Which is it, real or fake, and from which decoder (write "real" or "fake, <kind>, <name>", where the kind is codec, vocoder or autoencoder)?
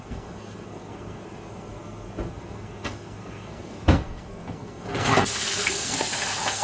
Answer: fake, codec, SNAC